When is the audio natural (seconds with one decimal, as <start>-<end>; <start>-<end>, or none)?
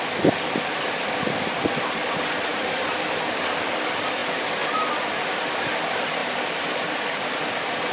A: 0.0-2.5; 3.0-6.2; 7.5-7.9